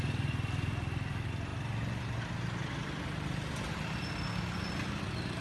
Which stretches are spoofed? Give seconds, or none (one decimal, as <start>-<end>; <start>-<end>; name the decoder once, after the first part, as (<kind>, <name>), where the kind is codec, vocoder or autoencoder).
none